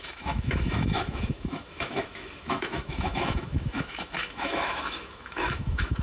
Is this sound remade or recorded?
remade